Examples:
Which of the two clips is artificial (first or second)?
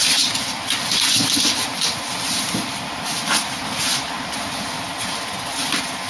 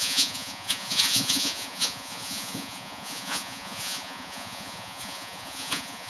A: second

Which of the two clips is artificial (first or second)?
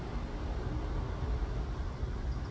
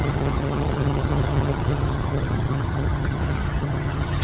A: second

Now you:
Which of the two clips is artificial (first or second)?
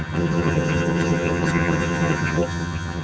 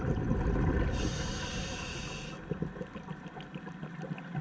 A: first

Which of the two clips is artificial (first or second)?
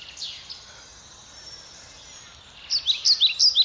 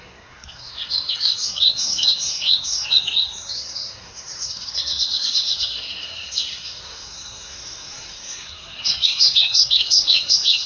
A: second